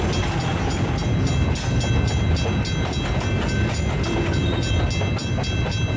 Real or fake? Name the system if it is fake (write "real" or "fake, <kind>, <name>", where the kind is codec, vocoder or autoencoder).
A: real